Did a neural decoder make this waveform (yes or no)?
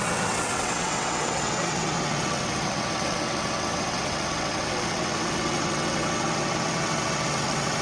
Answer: yes